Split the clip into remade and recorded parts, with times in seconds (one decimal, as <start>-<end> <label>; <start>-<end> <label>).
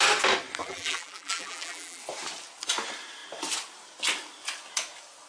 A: 0.0-0.6 recorded; 0.6-2.0 remade; 2.0-5.3 recorded